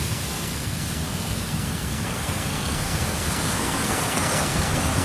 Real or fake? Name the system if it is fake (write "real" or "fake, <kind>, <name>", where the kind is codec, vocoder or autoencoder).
fake, codec, SNAC